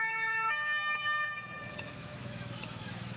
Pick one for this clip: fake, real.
fake